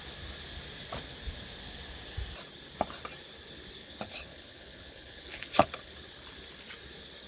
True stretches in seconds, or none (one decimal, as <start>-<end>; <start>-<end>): 0.0-3.8; 5.9-7.3